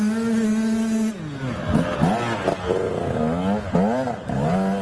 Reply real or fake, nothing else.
real